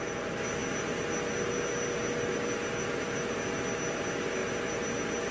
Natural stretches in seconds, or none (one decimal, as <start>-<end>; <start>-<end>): 0.0-5.3